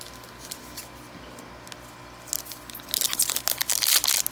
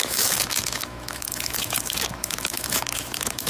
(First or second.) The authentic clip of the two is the first